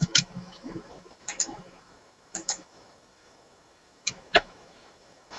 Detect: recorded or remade remade